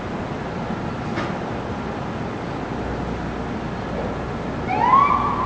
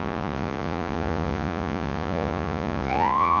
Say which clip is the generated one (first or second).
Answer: second